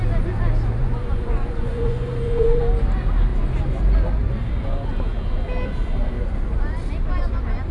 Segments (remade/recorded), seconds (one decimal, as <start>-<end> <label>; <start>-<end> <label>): 0.0-0.8 recorded; 0.8-2.6 remade; 2.6-7.7 recorded